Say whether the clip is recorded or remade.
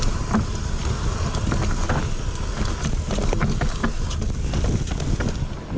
recorded